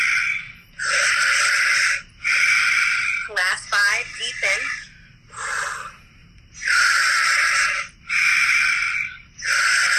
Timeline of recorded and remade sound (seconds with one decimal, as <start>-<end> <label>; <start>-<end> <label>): 0.0-6.2 recorded; 6.2-7.0 remade; 7.0-10.0 recorded